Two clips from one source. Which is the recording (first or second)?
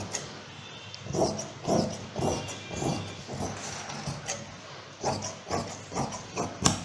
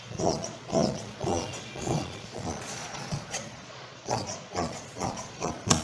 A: first